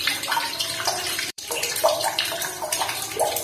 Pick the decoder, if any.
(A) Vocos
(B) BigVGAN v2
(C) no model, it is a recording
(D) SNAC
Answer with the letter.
B